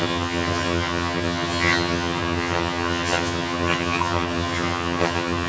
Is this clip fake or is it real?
fake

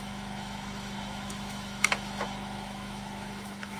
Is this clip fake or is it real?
fake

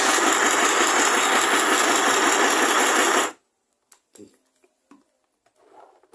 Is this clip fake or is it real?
real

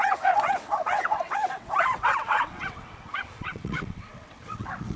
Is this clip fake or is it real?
fake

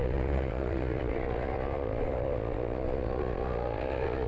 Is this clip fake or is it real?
fake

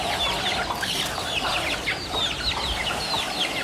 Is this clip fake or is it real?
real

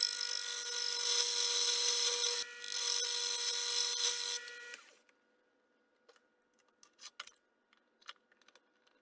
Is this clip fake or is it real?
real